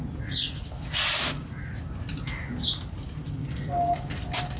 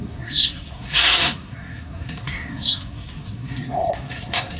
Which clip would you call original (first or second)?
first